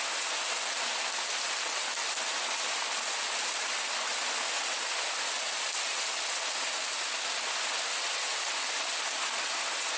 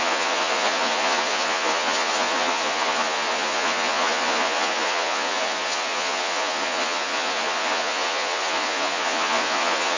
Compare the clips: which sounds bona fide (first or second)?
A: first